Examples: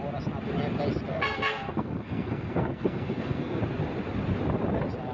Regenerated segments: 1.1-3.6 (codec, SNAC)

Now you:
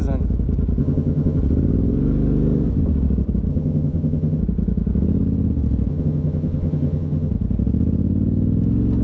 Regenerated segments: 0.8-1.4 (vocoder, HiFi-GAN); 3.5-4.4; 5.9-7.3

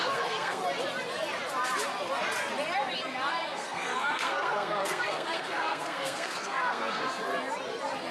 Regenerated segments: 0.0-0.6 (codec, SNAC); 3.3-7.3

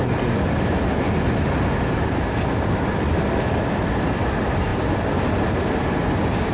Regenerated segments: none

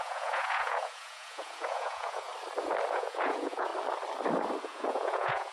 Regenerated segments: 0.0-2.3 (vocoder, Vocos); 2.9-3.7; 4.6-5.5

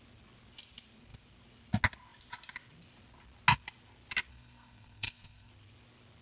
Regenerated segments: 4.3-5.5 (codec, SNAC)

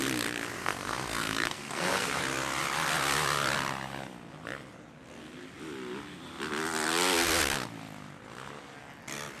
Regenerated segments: 0.6-2.2 (codec, SNAC)